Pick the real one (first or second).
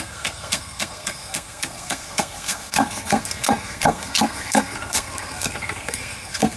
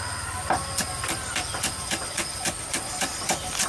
second